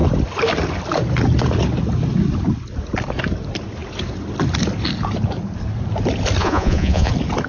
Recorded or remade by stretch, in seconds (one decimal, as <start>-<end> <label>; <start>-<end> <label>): 0.0-6.4 recorded; 6.4-7.1 remade; 7.1-7.5 recorded